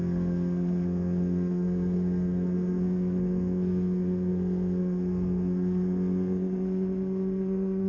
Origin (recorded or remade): remade